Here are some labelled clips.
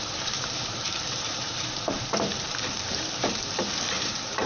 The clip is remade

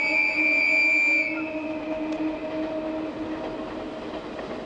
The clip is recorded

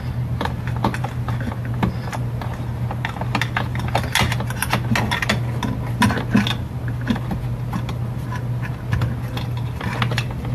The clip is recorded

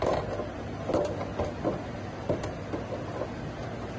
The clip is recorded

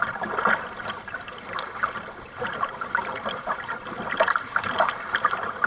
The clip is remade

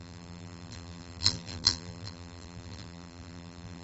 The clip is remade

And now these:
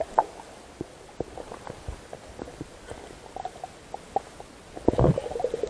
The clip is recorded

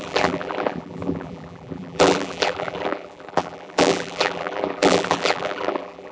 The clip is remade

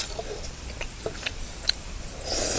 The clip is remade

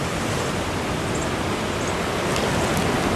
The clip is recorded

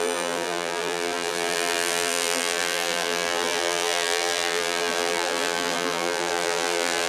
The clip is remade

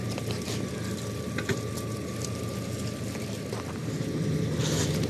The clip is recorded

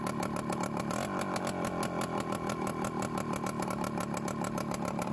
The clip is recorded